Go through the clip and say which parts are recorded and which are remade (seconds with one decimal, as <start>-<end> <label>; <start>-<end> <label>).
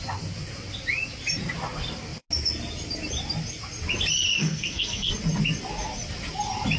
0.0-4.3 recorded; 4.3-5.1 remade; 5.1-6.8 recorded